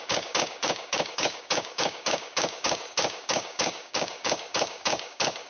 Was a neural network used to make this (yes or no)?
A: yes